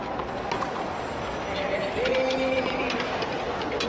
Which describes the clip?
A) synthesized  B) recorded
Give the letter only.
B